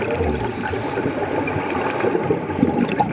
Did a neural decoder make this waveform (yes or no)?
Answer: no